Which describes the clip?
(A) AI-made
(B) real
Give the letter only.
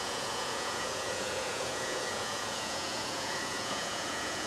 A